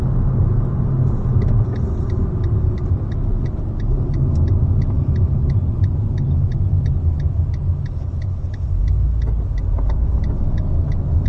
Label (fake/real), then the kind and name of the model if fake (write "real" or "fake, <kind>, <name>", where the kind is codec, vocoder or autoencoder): real